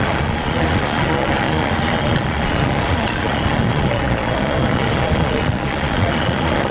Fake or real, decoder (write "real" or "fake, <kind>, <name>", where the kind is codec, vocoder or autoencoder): fake, vocoder, Vocos